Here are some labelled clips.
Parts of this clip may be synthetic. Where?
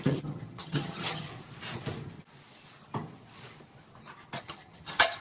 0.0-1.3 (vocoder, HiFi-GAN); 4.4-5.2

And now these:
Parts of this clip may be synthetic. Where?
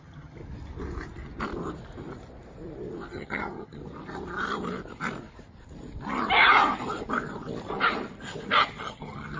0.0-0.4 (vocoder, HiFi-GAN); 3.1-3.8; 8.8-9.4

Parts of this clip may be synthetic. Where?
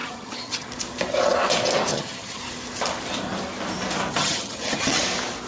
0.0-0.7 (vocoder, HiFi-GAN); 1.9-2.4; 4.2-5.0